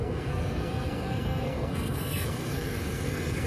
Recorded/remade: remade